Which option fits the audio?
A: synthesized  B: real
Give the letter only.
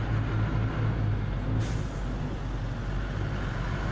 B